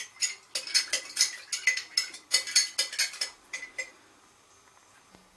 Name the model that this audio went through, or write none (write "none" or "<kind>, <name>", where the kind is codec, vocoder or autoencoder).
none